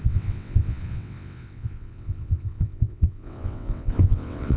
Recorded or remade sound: remade